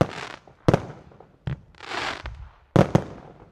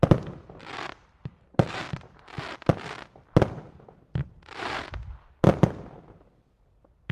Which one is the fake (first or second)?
second